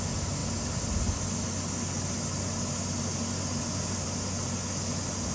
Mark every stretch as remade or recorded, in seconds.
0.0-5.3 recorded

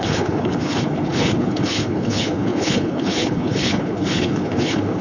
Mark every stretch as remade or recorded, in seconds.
0.0-5.0 remade

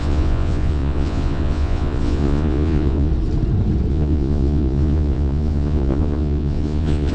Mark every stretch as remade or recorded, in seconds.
0.0-3.1 remade; 3.1-3.9 recorded; 3.9-7.1 remade

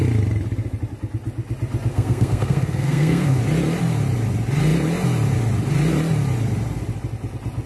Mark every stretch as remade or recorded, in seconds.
0.0-1.9 recorded; 1.9-3.4 remade; 3.4-7.7 recorded

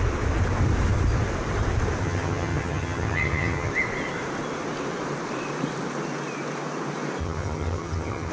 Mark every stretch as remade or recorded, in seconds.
0.0-2.0 recorded; 2.0-3.7 remade; 3.7-7.2 recorded; 7.2-8.3 remade